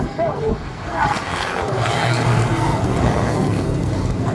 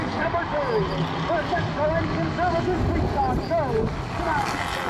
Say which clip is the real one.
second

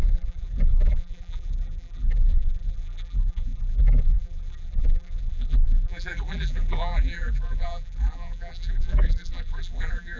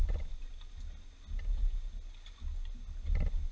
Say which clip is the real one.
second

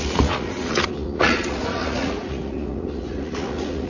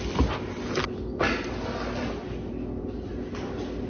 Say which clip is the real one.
second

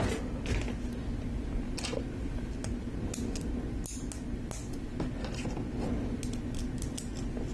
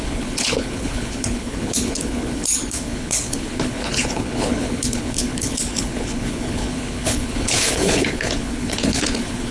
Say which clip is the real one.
first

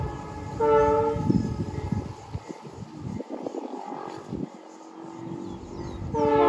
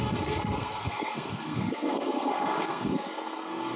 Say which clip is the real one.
first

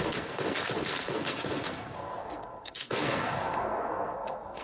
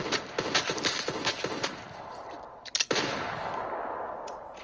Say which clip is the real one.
second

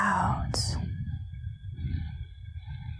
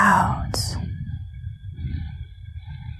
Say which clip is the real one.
first